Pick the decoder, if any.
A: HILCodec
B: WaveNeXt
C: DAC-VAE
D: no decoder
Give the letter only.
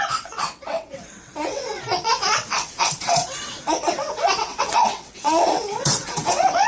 B